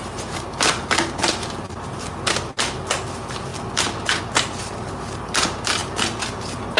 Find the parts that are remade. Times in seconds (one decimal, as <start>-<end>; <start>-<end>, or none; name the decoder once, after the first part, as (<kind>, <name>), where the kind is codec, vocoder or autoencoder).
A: none